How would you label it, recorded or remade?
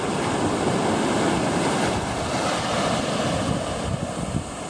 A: recorded